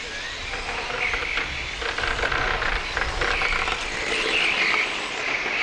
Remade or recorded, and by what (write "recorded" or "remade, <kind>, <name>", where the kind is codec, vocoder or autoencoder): recorded